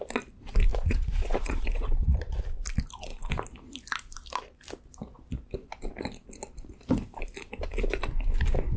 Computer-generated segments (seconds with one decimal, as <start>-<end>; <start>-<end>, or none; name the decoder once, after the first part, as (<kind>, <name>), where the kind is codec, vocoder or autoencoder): 0.7-2.4 (vocoder, Vocos)